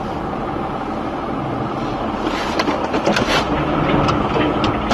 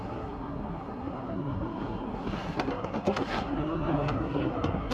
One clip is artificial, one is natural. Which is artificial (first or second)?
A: second